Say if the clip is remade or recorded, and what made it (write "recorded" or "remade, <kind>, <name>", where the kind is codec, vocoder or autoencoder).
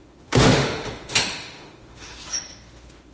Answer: remade, autoencoder, DAC-VAE